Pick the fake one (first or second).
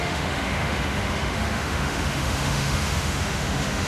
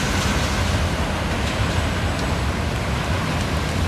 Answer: first